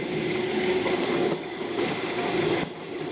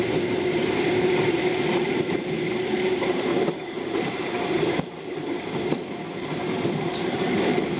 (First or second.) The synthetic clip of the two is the second